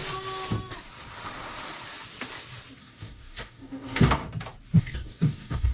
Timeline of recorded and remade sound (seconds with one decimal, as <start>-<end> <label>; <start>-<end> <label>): 0.0-2.8 recorded; 2.8-4.2 remade; 4.2-4.8 recorded; 4.8-5.7 remade